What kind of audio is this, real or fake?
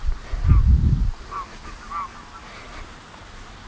real